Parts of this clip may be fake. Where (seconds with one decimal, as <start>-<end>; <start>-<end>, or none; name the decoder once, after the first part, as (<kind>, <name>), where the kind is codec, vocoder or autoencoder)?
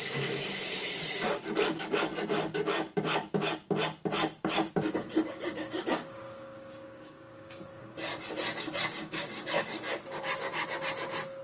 0.0-2.1 (codec, DAC); 4.7-8.1; 8.9-10.3